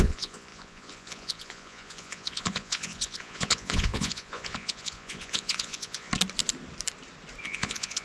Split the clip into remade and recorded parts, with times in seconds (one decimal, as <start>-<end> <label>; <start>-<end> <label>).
0.0-6.1 remade; 6.1-7.4 recorded; 7.4-8.0 remade